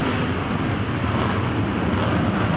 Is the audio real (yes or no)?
yes